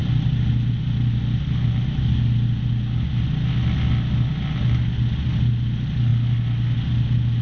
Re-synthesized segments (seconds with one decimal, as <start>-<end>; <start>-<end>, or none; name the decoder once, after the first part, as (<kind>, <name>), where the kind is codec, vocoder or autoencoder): none